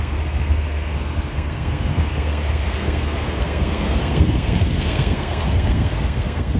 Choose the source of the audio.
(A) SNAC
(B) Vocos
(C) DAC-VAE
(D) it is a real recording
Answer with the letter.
A